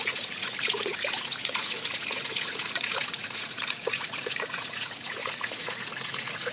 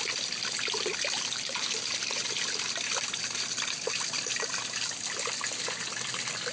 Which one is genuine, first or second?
second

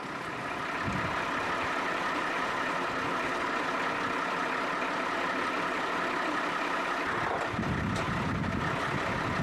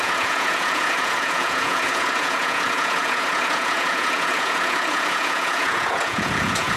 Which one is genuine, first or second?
first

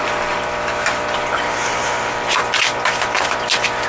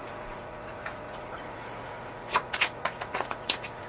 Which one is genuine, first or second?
first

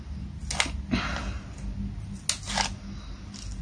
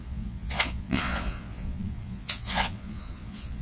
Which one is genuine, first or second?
first